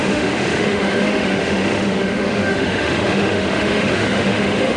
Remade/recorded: remade